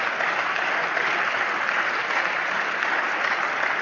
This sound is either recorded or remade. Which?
recorded